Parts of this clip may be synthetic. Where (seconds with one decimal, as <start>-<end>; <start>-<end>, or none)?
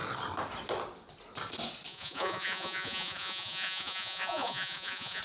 1.9-5.2